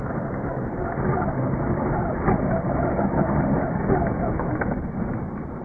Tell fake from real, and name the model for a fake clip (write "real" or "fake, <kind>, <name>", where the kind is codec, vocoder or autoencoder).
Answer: real